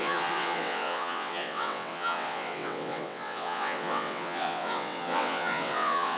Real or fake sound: fake